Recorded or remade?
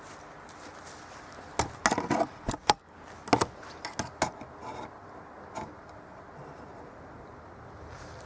recorded